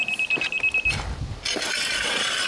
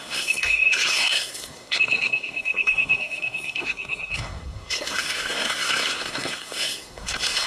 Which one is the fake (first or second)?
second